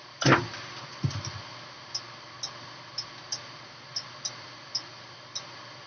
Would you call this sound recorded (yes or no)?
yes